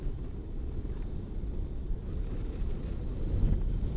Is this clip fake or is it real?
real